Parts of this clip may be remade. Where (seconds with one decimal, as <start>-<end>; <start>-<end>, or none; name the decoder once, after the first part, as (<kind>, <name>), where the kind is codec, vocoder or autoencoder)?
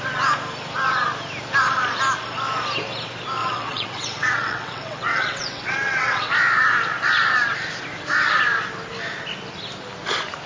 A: 3.4-6.3 (vocoder, WaveNeXt)